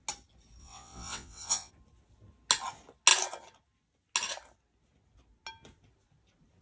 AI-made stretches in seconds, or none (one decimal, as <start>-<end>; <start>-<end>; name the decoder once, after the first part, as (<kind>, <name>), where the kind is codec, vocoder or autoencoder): 0.6-1.7 (vocoder, WaveNeXt)